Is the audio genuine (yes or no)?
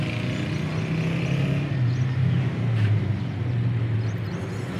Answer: yes